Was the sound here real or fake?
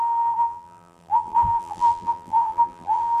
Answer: fake